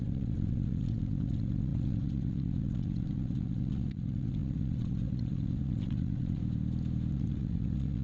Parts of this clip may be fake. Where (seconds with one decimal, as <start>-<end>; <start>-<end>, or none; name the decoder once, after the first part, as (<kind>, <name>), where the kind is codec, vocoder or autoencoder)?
0.0-6.4 (vocoder, WaveNeXt); 7.1-8.0